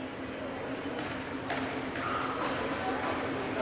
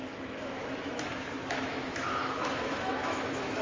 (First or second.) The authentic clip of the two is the first